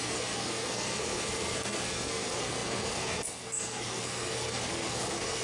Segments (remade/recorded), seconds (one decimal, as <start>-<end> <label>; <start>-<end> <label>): 0.0-5.4 remade